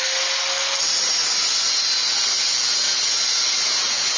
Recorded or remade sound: recorded